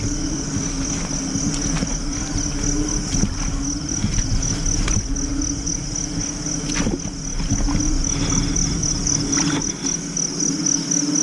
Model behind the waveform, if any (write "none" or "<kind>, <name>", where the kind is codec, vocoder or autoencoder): none